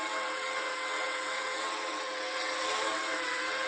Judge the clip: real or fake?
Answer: fake